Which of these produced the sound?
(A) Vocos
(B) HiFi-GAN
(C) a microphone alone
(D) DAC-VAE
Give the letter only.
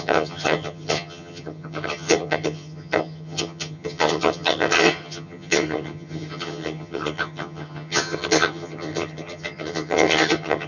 B